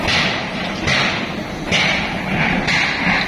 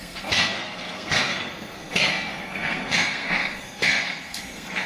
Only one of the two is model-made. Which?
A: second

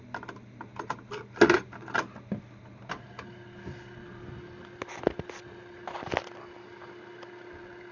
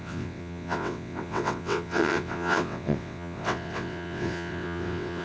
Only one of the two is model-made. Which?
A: second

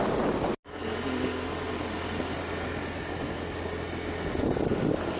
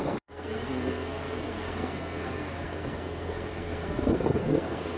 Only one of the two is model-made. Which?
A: second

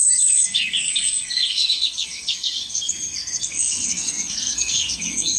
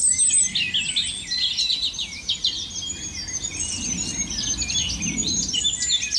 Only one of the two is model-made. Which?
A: first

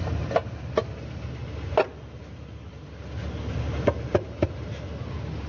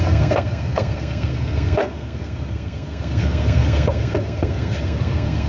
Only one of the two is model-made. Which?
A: second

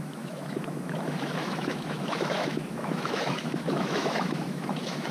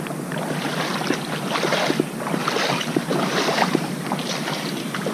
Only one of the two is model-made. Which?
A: first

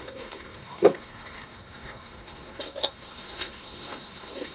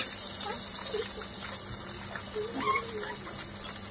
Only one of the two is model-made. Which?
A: first